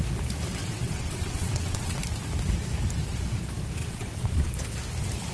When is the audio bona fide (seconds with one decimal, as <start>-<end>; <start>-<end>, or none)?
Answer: 0.0-0.6; 2.0-3.8; 4.5-5.3